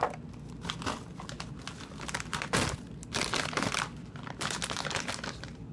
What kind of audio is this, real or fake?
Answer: real